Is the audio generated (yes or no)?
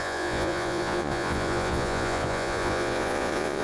yes